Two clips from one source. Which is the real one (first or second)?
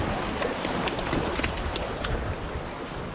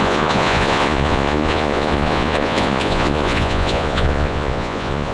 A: first